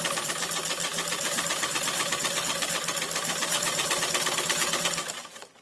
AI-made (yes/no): no